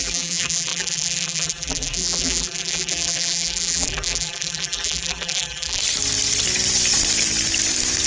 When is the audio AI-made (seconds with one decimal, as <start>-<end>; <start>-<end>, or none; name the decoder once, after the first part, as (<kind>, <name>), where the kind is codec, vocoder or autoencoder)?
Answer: 0.0-5.8 (vocoder, BigVGAN v2)